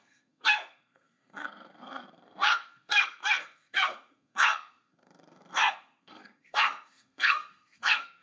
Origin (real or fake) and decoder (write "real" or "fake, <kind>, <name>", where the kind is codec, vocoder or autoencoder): fake, codec, SNAC